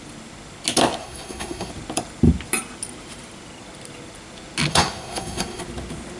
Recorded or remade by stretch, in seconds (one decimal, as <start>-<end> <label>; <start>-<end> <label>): 0.0-1.0 recorded; 1.0-1.7 remade; 1.7-4.7 recorded; 4.7-5.6 remade; 5.6-6.2 recorded